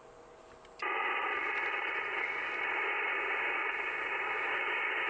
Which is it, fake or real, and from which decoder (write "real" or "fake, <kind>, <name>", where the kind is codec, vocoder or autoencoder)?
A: real